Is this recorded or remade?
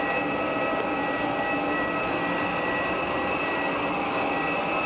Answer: recorded